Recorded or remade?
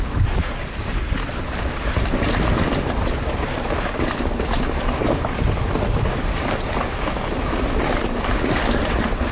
remade